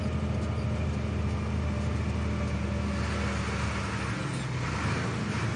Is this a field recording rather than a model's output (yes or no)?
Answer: yes